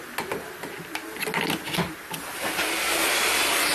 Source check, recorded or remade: recorded